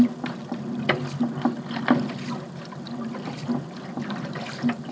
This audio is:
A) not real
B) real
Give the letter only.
B